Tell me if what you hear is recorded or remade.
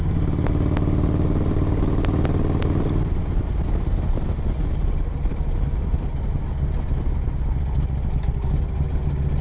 recorded